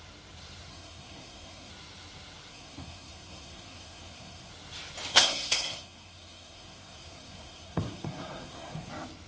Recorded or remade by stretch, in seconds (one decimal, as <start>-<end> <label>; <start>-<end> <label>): 0.0-0.7 recorded; 0.7-1.7 remade; 1.7-2.5 recorded; 2.5-4.5 remade; 4.5-5.1 recorded; 5.1-8.9 remade; 8.9-9.3 recorded